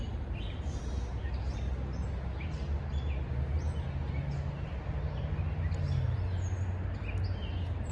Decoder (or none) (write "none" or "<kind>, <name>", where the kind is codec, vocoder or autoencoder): none